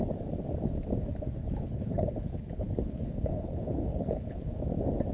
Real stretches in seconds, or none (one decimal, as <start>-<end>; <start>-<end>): 0.0-1.4; 4.5-5.1